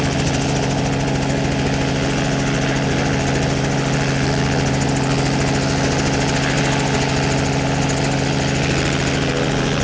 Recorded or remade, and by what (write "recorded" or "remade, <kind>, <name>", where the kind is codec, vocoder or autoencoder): recorded